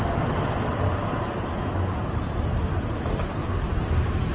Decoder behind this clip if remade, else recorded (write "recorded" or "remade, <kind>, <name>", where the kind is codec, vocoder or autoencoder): recorded